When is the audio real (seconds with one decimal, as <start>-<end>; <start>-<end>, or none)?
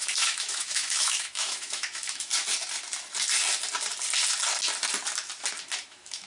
2.3-5.8